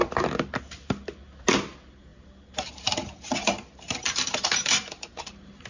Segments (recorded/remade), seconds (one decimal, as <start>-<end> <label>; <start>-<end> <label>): 0.0-2.1 recorded; 2.1-5.7 remade